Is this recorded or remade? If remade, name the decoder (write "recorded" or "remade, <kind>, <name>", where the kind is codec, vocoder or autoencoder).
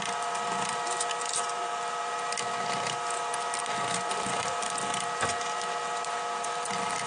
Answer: remade, vocoder, BigVGAN v2